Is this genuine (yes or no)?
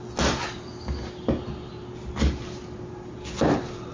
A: yes